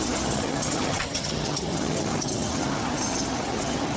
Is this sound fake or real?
fake